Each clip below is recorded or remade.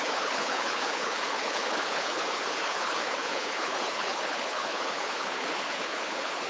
remade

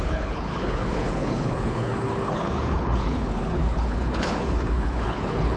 remade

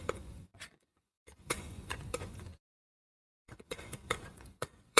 remade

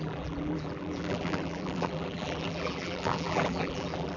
remade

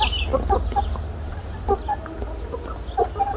recorded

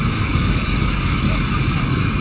remade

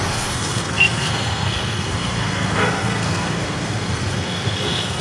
remade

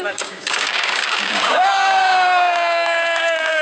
remade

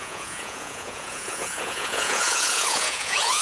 remade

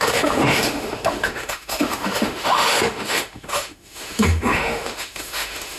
remade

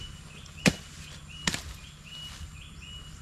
recorded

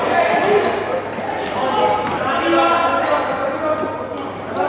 recorded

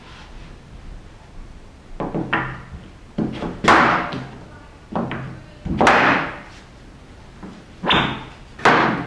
recorded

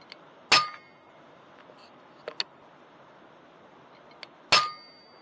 recorded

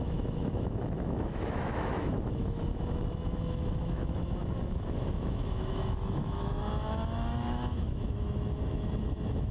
remade